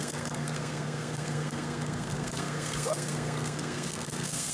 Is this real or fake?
fake